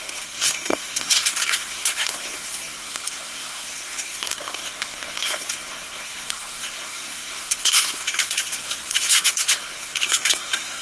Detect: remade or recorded remade